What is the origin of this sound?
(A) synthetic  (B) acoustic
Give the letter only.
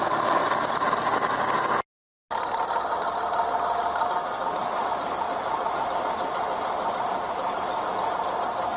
B